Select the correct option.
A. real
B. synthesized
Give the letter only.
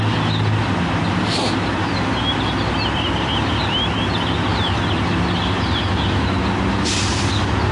A